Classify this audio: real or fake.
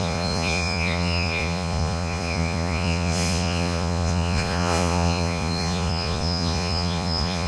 fake